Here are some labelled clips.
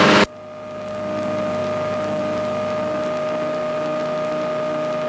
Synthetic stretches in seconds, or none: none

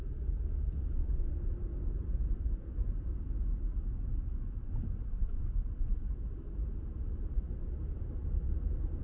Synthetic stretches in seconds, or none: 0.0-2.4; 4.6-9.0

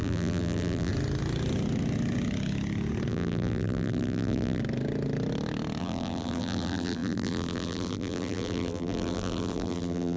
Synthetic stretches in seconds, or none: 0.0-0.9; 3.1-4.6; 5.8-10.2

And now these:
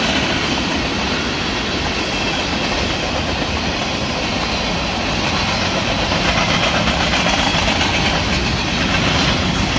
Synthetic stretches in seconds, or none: 7.5-8.0

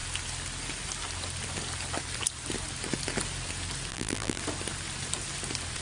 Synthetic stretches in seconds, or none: 3.9-4.4

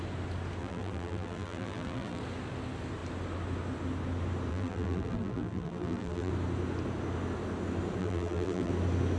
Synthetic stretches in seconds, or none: 0.6-2.2; 4.5-6.3; 8.0-8.7

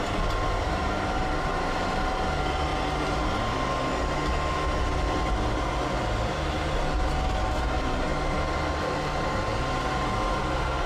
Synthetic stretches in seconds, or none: none

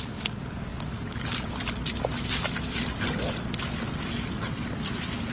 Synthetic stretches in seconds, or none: none